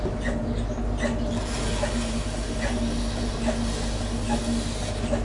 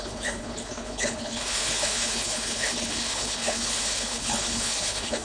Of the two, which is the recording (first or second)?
first